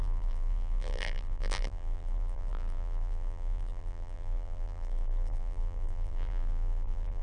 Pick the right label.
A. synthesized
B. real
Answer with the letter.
A